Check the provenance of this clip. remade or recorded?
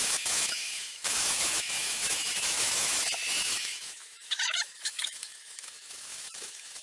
remade